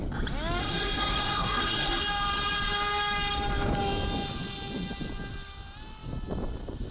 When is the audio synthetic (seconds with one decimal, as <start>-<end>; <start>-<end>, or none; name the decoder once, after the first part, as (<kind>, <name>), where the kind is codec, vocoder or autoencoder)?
0.6-2.0 (codec, SNAC)